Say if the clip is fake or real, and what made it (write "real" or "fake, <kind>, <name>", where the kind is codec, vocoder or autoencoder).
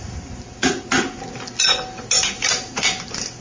real